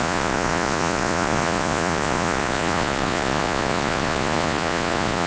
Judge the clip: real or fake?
fake